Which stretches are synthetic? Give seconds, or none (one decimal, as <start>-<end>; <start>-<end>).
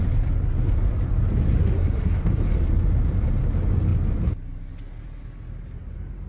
1.5-2.4